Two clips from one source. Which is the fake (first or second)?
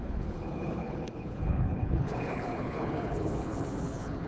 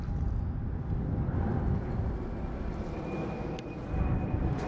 first